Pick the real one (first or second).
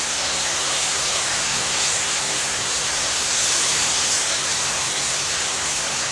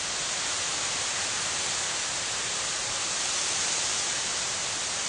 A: second